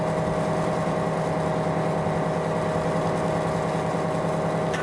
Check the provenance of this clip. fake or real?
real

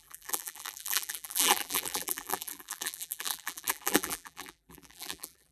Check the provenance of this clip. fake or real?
fake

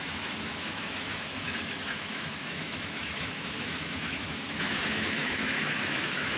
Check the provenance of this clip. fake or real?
fake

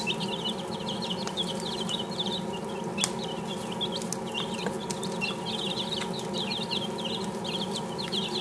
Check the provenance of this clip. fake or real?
real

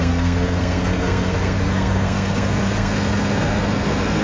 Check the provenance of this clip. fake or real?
fake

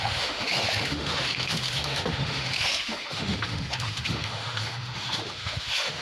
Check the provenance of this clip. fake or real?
fake